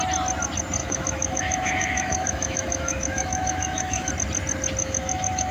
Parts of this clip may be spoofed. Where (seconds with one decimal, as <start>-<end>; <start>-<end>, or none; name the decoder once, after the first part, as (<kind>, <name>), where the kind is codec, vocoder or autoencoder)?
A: 0.8-4.1 (autoencoder, DAC-VAE); 4.8-5.5